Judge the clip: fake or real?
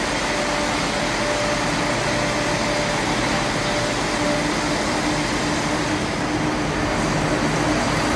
real